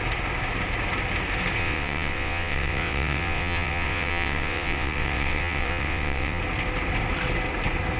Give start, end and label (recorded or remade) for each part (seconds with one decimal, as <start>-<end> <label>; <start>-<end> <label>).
0.0-1.6 recorded; 1.6-6.4 remade; 6.4-8.0 recorded